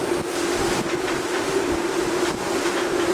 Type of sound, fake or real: real